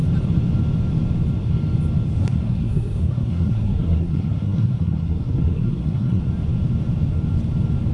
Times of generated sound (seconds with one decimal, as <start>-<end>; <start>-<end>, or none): 2.2-6.2